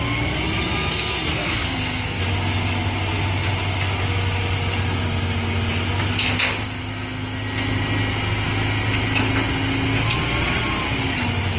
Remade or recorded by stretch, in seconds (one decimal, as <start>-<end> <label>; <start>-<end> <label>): 0.0-1.3 recorded; 1.3-2.2 remade; 2.2-11.6 recorded